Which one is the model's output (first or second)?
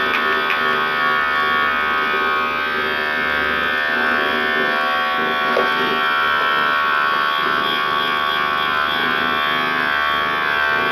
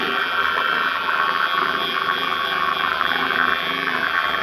second